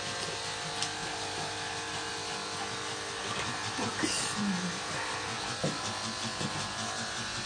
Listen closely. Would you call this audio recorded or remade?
recorded